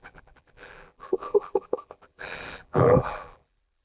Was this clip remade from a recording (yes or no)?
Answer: yes